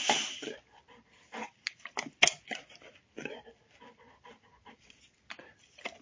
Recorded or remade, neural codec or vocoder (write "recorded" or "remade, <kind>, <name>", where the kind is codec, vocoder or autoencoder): recorded